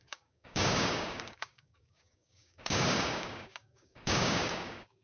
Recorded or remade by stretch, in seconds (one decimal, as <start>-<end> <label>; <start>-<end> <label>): 0.0-5.0 remade